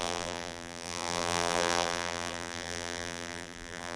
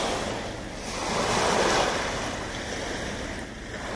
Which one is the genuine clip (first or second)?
second